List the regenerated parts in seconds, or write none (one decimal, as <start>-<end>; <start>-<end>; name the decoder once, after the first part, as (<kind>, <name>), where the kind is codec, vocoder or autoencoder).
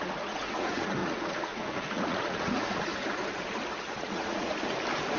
0.0-2.9 (vocoder, Vocos); 3.7-4.5